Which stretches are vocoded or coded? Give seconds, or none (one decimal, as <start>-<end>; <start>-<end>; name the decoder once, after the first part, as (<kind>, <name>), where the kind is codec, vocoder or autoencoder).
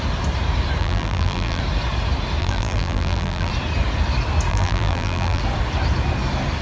0.8-1.6 (vocoder, BigVGAN v2); 2.4-3.5; 4.5-5.4